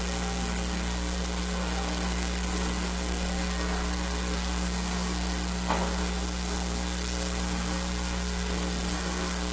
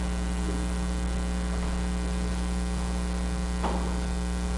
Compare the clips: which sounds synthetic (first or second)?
first